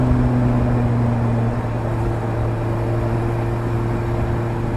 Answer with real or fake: real